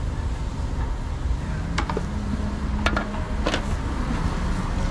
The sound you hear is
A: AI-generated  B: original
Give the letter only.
B